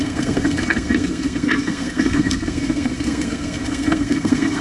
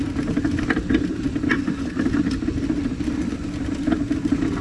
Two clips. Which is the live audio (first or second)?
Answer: second